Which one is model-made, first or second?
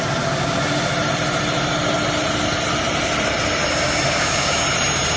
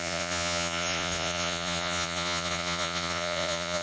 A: second